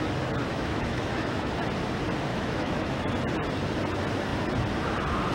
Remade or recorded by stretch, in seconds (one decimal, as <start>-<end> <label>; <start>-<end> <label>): 0.0-0.5 recorded; 0.5-1.5 remade; 1.5-2.3 recorded; 2.3-3.1 remade; 3.1-5.3 recorded